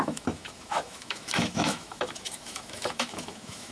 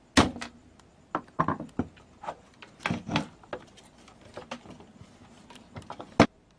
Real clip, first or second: second